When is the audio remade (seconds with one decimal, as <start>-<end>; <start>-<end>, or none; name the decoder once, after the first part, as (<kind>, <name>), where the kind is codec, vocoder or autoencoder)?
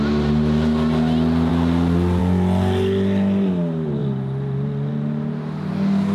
none